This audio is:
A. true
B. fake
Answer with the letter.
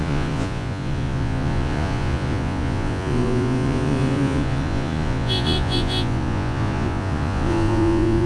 B